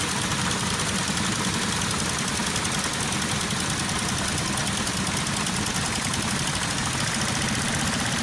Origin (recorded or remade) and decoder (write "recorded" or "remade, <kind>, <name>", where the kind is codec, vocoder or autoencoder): recorded